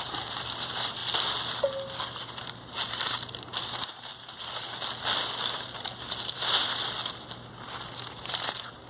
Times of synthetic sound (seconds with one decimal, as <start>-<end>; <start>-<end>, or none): 0.0-1.0; 2.4-4.1; 8.1-8.9